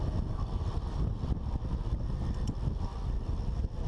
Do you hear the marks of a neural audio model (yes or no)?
no